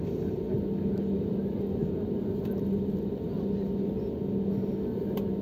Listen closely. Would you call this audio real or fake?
real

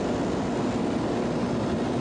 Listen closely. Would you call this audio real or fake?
real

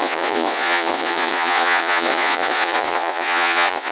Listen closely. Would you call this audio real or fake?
fake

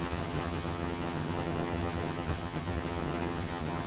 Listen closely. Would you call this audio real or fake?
fake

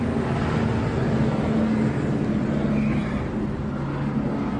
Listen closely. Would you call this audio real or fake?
real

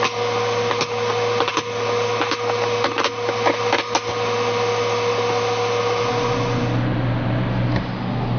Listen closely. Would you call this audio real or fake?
real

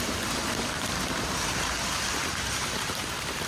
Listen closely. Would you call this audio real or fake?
fake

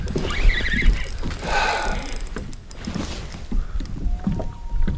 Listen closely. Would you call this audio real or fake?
real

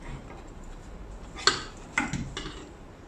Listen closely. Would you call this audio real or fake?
real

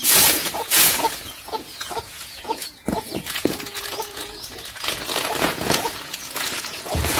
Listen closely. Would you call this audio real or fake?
fake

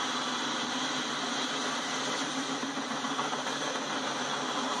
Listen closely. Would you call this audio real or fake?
real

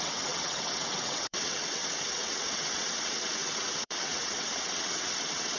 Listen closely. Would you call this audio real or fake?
fake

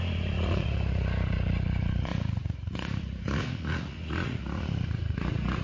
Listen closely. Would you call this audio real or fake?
fake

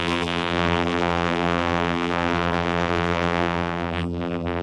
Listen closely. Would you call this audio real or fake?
fake